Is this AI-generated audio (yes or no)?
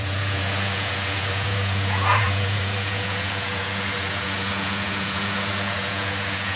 yes